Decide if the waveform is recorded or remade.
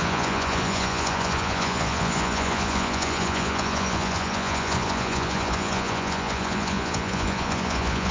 remade